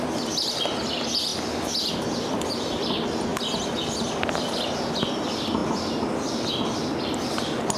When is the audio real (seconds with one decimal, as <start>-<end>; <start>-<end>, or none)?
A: 0.0-7.8